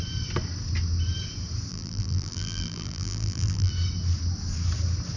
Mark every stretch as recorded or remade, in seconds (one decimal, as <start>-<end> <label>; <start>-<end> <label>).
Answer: 0.0-1.7 recorded; 1.7-3.7 remade; 3.7-5.2 recorded